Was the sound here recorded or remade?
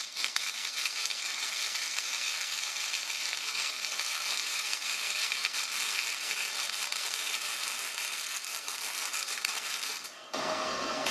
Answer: remade